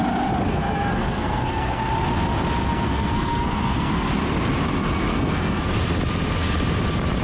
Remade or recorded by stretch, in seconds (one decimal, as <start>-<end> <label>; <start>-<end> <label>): 0.0-0.5 recorded; 0.5-1.8 remade; 1.8-2.6 recorded; 2.6-3.9 remade; 3.9-5.1 recorded; 5.1-5.7 remade; 5.7-7.2 recorded